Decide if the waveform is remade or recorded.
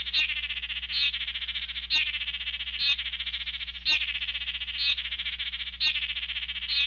recorded